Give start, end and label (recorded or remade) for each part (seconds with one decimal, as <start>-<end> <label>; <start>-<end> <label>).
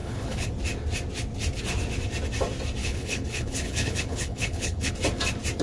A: 0.0-0.5 remade; 0.5-2.8 recorded; 2.8-4.9 remade; 4.9-5.6 recorded